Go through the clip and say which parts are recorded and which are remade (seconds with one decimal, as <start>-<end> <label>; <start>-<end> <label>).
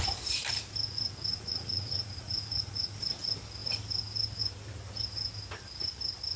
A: 0.0-1.3 recorded; 1.3-3.0 remade; 3.0-6.4 recorded